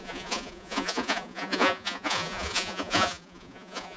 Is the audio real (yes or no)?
no